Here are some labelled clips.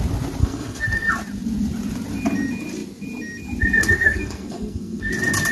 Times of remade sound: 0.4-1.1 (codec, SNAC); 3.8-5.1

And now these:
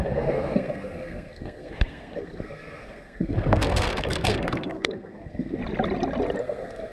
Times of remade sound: 0.0-5.6 (codec, SNAC); 6.4-6.9

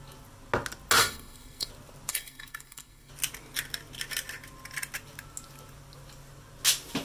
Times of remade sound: 1.0-1.7 (codec, SNAC); 2.1-3.1

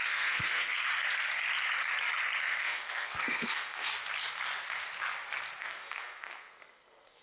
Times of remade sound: 0.0-0.8 (codec, SNAC); 2.6-3.9; 5.6-7.2

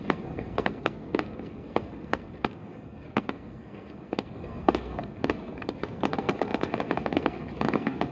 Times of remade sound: 0.0-8.1 (codec, SNAC)

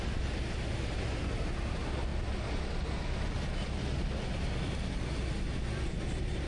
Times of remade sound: none

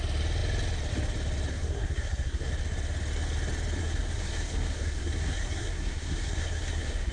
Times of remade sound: 1.5-2.5 (codec, SNAC); 3.8-7.1